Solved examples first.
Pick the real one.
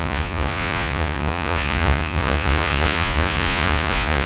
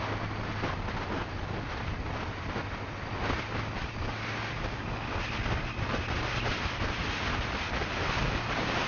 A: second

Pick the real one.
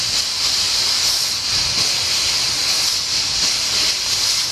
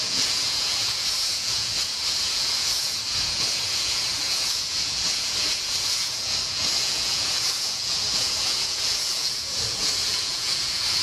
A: first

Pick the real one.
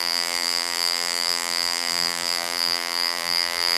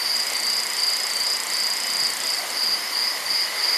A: second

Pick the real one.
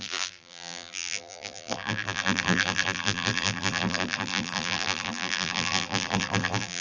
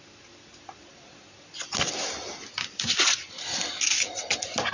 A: second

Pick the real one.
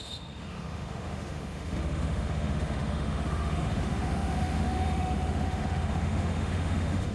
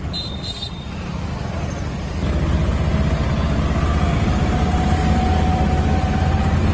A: second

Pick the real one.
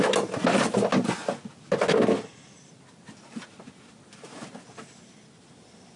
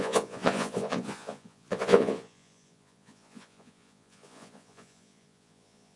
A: first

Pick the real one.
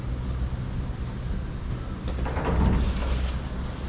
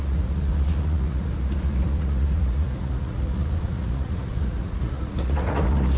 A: first